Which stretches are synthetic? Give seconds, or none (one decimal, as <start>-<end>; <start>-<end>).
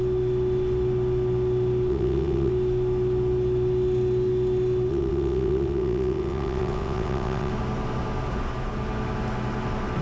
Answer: 1.9-2.5; 4.9-7.5